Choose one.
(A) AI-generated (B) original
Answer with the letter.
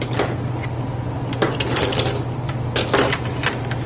B